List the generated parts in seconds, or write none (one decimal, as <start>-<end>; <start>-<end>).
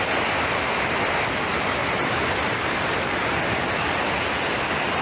1.8-3.3